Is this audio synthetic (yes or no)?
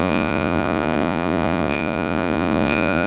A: yes